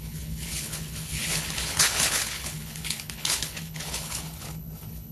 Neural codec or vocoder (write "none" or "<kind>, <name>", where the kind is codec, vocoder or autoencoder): codec, HILCodec